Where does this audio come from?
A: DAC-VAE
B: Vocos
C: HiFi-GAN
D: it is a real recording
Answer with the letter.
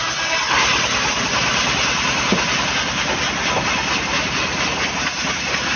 D